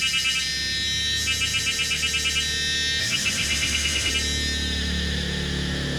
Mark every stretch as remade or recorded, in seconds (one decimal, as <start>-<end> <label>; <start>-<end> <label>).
0.0-3.0 recorded; 3.0-4.1 remade; 4.1-6.0 recorded